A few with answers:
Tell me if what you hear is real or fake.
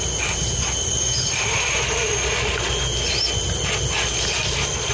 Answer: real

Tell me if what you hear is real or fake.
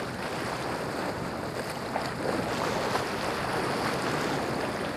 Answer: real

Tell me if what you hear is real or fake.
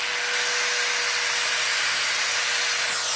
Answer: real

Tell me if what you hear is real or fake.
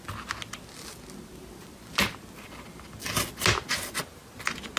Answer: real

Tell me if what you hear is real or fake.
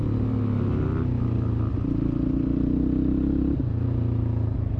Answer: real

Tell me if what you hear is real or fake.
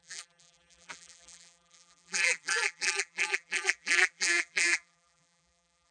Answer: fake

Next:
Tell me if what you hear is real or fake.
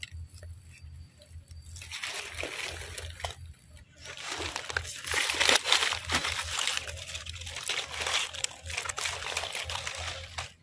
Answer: real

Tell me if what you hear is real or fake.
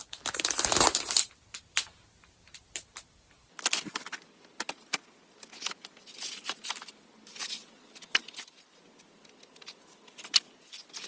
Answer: real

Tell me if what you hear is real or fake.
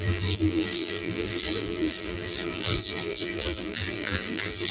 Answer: fake